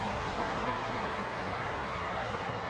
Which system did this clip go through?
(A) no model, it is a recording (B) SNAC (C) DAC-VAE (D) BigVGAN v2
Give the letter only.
B